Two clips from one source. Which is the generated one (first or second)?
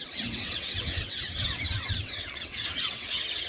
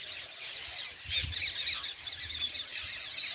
first